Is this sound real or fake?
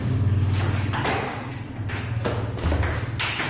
real